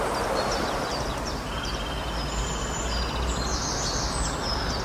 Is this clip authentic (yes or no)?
yes